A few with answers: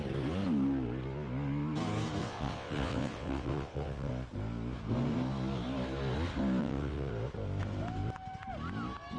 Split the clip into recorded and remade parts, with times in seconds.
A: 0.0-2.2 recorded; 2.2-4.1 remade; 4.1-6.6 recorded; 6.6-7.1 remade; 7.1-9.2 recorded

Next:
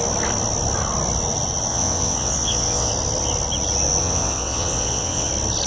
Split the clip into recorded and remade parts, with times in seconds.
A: 0.0-1.7 recorded; 1.7-2.9 remade; 2.9-4.0 recorded; 4.0-5.3 remade; 5.3-5.7 recorded

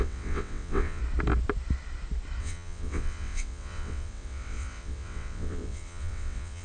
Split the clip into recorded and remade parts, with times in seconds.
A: 0.0-1.0 remade; 1.0-2.4 recorded; 2.4-6.6 remade

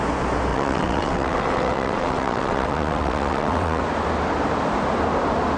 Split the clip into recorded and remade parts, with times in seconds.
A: 0.0-0.5 recorded; 0.5-3.8 remade; 3.8-5.6 recorded

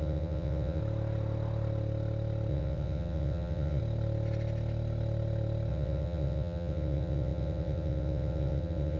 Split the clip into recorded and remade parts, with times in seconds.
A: 0.0-0.8 remade; 0.8-2.5 recorded; 2.5-3.8 remade; 3.8-5.7 recorded; 5.7-9.0 remade

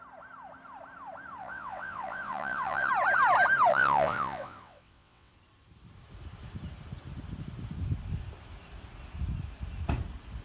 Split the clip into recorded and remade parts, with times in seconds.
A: 0.0-1.4 recorded; 1.4-2.9 remade; 2.9-3.7 recorded; 3.7-5.3 remade; 5.3-10.4 recorded

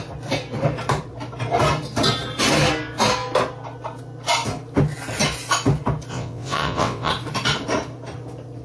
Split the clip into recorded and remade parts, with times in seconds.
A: 0.0-6.1 recorded; 6.1-7.1 remade; 7.1-8.6 recorded